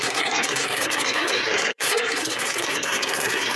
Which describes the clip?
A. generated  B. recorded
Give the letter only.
A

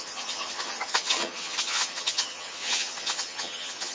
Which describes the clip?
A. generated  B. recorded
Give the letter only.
A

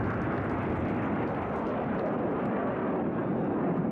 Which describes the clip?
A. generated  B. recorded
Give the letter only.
B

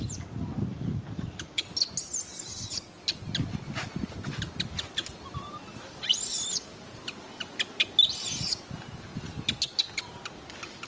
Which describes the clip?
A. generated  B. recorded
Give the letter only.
B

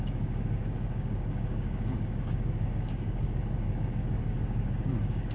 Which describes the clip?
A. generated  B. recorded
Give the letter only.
A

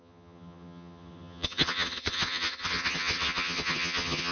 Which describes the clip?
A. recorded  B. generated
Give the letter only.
B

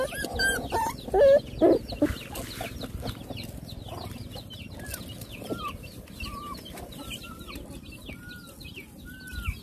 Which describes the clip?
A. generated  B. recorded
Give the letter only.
B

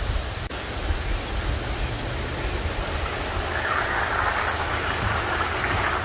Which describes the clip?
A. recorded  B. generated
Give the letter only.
A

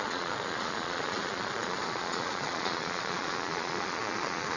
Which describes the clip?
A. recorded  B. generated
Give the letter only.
B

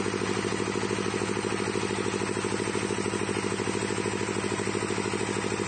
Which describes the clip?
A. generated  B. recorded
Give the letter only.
B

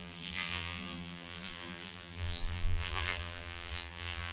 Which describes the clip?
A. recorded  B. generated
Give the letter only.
B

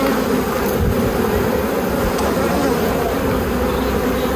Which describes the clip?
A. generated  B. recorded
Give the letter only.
B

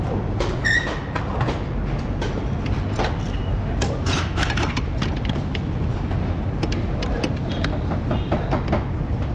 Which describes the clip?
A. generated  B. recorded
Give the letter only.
B